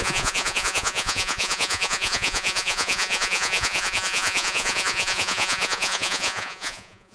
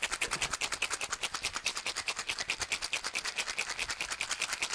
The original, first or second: second